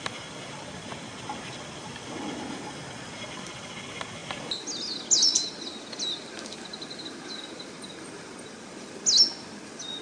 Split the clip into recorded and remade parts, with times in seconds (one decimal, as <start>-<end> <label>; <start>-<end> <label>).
0.0-10.0 recorded